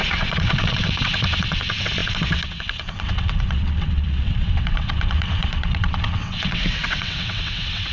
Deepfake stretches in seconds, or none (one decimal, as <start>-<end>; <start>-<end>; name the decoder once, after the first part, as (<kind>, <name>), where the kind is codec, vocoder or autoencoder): 0.0-7.9 (vocoder, WaveNeXt)